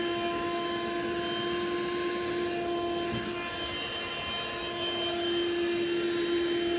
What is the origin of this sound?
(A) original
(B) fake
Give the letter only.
A